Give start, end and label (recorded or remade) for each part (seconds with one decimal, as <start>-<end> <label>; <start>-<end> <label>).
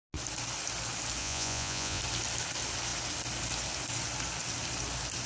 0.0-1.2 recorded; 1.2-2.0 remade; 2.0-5.3 recorded